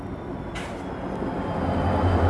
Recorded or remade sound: recorded